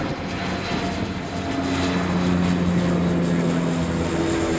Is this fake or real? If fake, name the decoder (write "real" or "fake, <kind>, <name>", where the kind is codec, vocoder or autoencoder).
real